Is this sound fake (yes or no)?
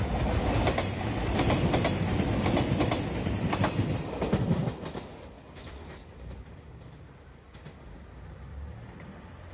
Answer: no